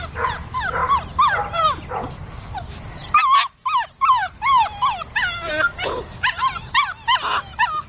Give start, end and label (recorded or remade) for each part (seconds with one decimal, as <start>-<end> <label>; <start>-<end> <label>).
0.0-7.9 recorded